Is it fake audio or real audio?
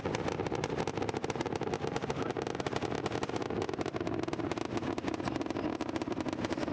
real